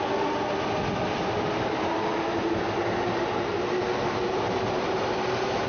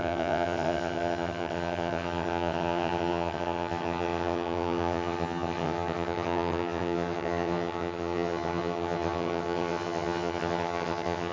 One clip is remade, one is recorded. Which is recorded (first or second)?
first